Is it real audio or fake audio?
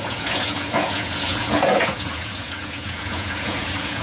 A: fake